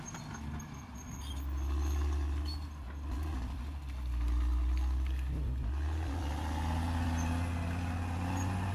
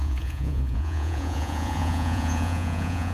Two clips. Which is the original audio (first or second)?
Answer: first